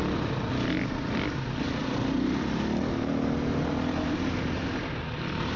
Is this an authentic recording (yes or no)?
yes